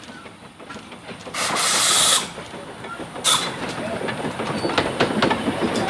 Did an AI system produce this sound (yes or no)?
yes